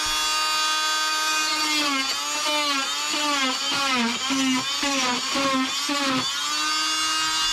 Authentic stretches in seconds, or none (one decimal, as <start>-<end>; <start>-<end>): 0.0-7.5

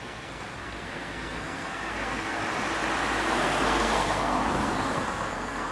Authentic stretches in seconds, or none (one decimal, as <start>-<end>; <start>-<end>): 2.4-3.2

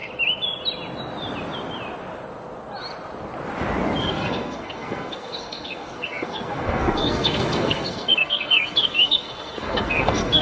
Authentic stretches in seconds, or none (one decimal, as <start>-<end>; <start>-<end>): 0.0-4.0

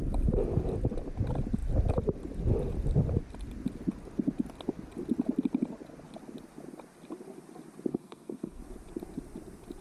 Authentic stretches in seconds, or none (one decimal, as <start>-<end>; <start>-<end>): 0.0-7.9; 8.6-9.8

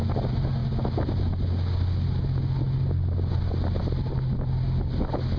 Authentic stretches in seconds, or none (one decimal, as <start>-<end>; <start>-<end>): 0.0-5.4

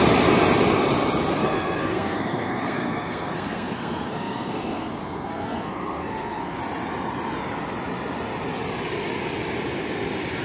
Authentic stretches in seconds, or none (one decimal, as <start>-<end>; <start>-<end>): 0.0-1.4; 6.6-10.4

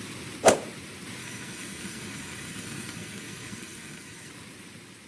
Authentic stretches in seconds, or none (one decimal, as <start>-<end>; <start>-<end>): 0.0-1.2; 4.3-5.1

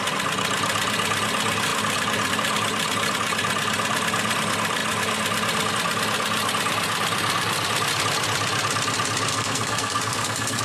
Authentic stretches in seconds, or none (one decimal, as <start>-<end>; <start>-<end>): 0.0-9.3